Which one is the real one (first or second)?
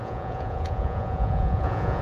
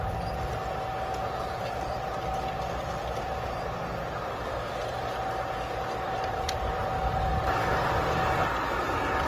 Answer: second